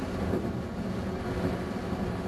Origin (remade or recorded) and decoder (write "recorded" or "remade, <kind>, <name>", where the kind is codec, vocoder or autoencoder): recorded